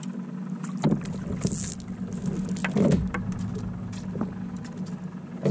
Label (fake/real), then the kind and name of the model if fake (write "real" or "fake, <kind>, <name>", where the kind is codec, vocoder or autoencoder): real